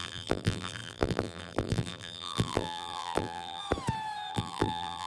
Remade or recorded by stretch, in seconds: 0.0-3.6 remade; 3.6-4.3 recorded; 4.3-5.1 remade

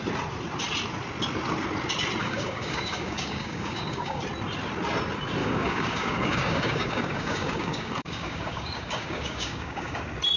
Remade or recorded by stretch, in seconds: 0.0-2.2 recorded; 2.2-4.2 remade; 4.2-5.4 recorded; 5.4-10.0 remade; 10.0-10.4 recorded

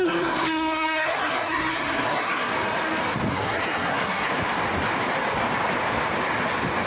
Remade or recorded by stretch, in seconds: 0.0-2.5 remade; 2.5-3.3 recorded; 3.3-4.3 remade; 4.3-6.9 recorded